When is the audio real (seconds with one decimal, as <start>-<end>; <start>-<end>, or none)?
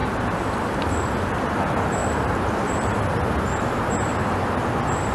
0.6-5.1